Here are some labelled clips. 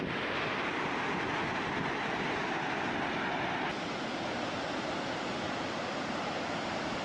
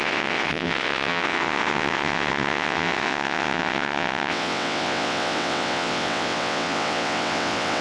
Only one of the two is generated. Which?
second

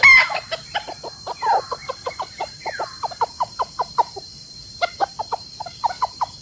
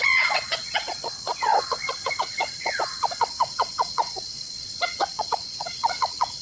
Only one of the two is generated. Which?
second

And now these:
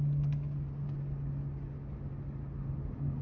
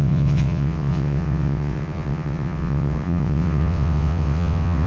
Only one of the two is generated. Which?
second